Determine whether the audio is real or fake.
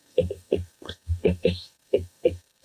fake